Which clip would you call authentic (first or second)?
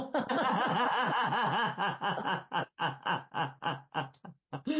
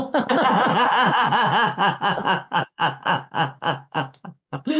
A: first